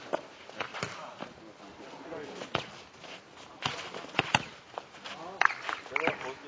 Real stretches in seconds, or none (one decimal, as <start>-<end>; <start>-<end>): 0.0-0.7; 1.4-6.5

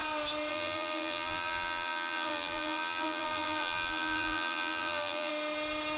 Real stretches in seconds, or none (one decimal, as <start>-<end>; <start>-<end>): 0.0-0.5; 5.3-6.0

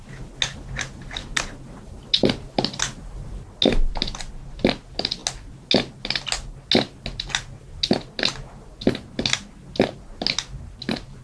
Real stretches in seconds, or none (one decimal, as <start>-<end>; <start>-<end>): 0.0-11.2

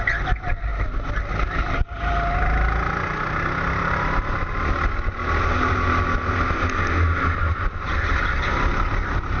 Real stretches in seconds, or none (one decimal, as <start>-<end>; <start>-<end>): 0.0-9.4

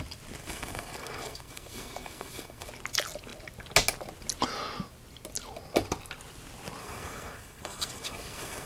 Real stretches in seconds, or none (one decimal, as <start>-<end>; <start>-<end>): 0.0-0.4; 2.7-6.8

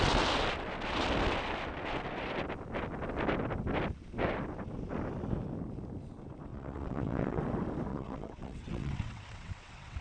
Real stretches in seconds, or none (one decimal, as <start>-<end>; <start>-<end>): 0.0-6.5; 7.4-7.9

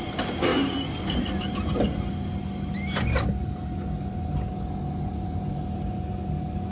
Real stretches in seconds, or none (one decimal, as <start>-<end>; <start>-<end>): 0.0-6.7

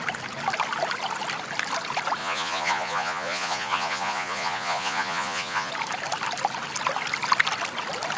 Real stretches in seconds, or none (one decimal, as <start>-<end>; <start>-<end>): 0.0-2.2; 5.7-8.2